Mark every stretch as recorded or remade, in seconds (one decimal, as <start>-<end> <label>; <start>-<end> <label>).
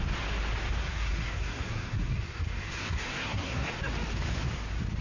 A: 0.0-0.8 recorded; 0.8-3.8 remade; 3.8-5.0 recorded